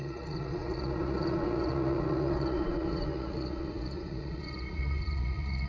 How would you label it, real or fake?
fake